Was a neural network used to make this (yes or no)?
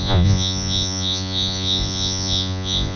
yes